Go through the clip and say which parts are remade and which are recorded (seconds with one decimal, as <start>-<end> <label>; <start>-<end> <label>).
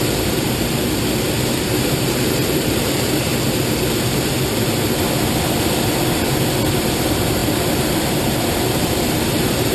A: 0.0-3.3 remade; 3.3-6.7 recorded; 6.7-9.7 remade